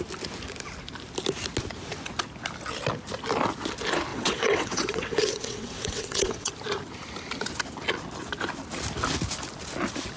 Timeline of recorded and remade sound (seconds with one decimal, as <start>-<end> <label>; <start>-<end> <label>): 0.0-4.1 recorded; 4.1-6.5 remade; 6.5-10.2 recorded